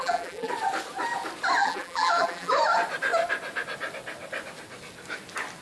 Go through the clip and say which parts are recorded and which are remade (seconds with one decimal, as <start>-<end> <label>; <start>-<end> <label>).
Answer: 0.0-0.5 remade; 0.5-1.6 recorded; 1.6-2.5 remade; 2.5-5.6 recorded